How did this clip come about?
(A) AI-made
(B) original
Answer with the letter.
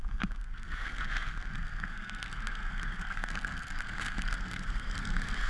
A